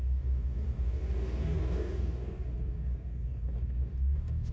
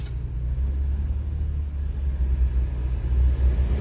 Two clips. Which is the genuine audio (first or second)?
second